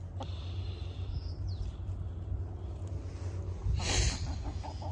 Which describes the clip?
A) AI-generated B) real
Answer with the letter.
B